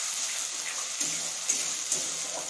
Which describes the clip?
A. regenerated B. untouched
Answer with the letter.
B